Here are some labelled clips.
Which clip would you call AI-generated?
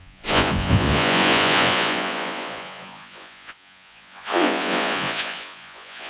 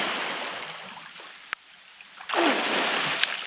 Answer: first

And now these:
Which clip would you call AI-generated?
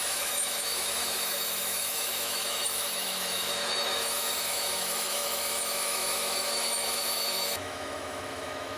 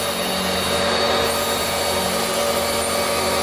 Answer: first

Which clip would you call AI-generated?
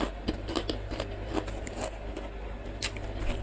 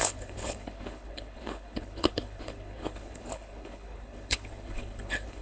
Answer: second